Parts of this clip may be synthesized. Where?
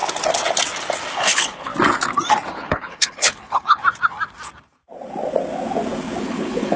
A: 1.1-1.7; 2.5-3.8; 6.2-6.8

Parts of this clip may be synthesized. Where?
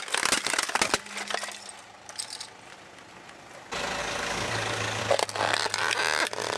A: 4.0-5.0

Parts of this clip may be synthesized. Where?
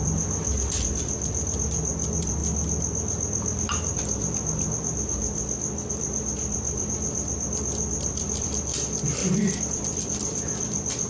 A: 0.0-2.4; 5.9-9.2; 9.7-11.1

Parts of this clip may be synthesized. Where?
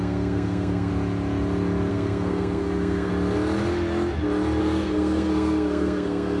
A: 0.0-0.9; 1.9-3.1; 4.6-6.4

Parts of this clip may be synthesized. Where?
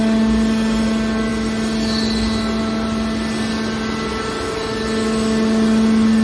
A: none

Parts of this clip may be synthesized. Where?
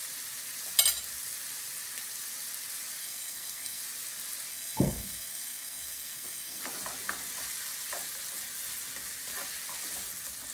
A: 3.0-3.8; 4.5-6.6